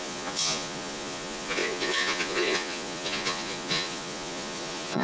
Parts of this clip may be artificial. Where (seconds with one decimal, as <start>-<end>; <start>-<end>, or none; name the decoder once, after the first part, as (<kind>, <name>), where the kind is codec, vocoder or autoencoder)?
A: 0.0-5.0 (vocoder, Vocos)